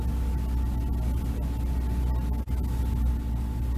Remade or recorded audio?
recorded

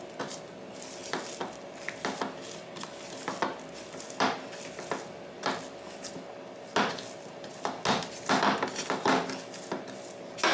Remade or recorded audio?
recorded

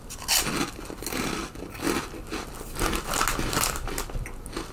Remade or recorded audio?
recorded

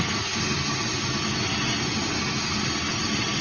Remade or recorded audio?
recorded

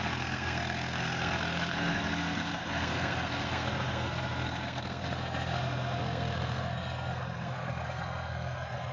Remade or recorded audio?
remade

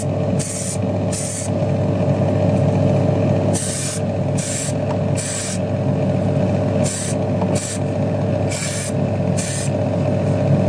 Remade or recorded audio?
recorded